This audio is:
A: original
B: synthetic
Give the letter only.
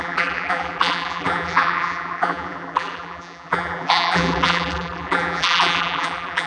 B